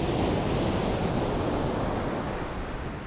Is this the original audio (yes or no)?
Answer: yes